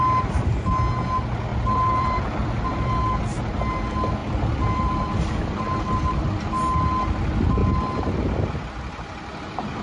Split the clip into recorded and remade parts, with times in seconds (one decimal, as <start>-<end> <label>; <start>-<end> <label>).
0.0-1.5 recorded; 1.5-3.2 remade; 3.2-4.2 recorded; 4.2-6.5 remade; 6.5-9.8 recorded